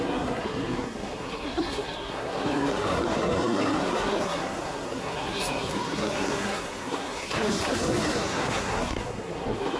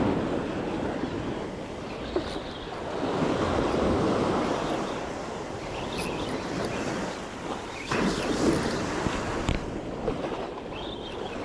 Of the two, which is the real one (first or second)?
second